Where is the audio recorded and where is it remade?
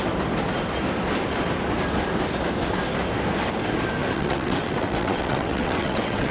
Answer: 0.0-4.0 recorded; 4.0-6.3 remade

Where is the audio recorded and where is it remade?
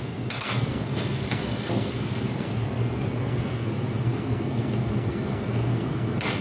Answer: 0.0-6.4 remade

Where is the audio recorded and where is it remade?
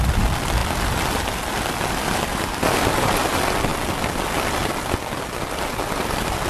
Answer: 0.0-6.5 recorded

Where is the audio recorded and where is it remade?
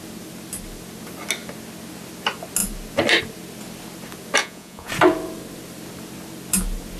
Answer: 0.0-4.4 recorded; 4.4-4.9 remade; 4.9-7.0 recorded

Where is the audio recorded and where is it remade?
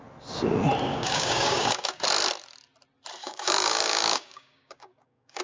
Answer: 0.0-0.9 recorded; 0.9-2.0 remade; 2.0-3.2 recorded; 3.2-5.4 remade